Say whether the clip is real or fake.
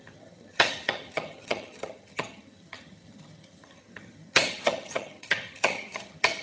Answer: fake